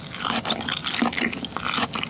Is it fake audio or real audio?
real